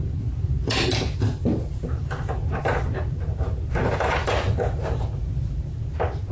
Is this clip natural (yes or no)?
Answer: yes